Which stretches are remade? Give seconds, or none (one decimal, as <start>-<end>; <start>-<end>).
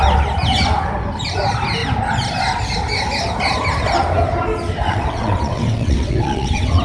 4.8-6.8